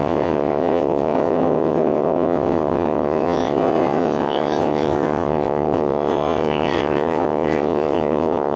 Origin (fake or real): fake